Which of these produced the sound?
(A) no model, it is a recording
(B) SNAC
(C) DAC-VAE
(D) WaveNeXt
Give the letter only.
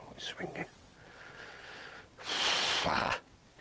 D